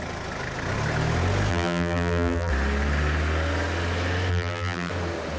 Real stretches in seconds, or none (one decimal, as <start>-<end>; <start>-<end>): 0.0-1.5; 2.5-4.3; 4.9-5.4